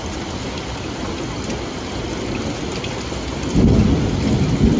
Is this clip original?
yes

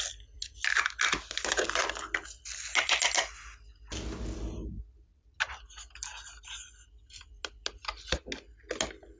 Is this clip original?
yes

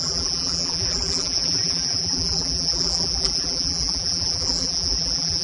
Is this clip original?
no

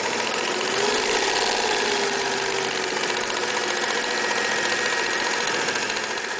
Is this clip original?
yes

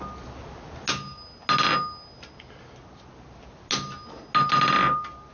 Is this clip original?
yes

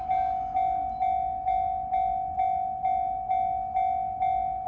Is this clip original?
yes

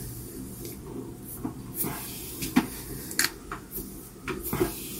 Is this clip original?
yes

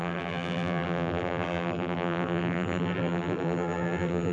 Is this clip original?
no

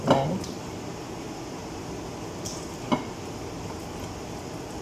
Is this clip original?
yes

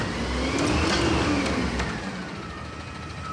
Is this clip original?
yes